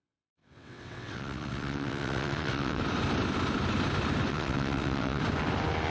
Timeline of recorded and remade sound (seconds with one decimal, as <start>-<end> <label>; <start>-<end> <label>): 0.0-0.4 recorded; 0.4-2.8 remade; 2.8-4.3 recorded; 4.3-5.2 remade; 5.2-5.9 recorded